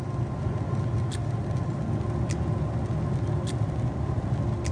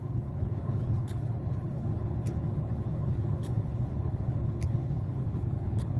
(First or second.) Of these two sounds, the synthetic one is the second